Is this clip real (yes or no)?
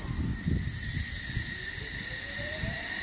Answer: yes